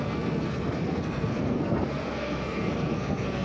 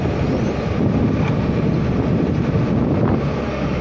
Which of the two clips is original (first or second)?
second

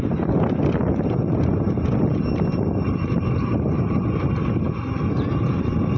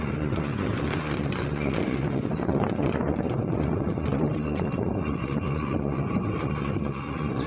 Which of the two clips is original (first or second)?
first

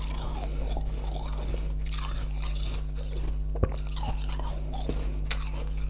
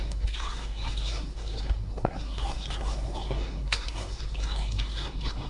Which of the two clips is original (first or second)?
first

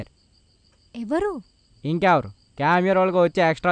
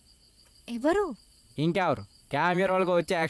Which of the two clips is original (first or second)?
first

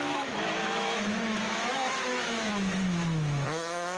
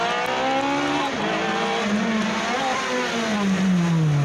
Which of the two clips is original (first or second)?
second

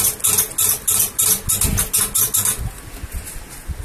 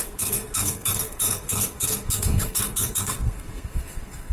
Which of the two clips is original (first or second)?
first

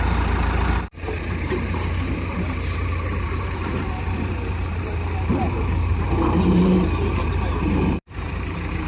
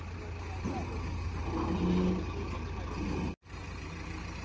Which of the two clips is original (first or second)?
second